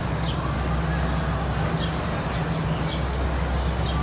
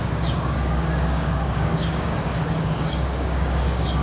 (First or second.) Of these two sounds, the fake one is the second